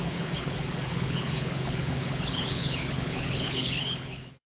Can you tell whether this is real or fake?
fake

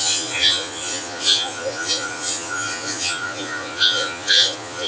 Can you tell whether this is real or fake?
fake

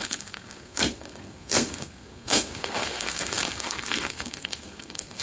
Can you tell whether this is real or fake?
fake